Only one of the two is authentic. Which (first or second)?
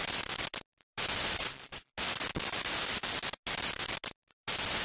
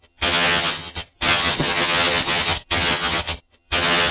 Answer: first